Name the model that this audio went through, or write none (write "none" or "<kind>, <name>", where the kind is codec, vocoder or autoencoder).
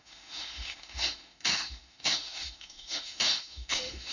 autoencoder, DAC-VAE